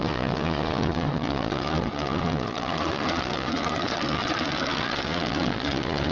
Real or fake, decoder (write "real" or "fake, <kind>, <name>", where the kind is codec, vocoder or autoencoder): fake, vocoder, Vocos